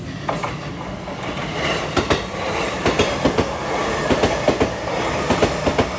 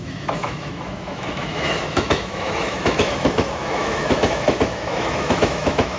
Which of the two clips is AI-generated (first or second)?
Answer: second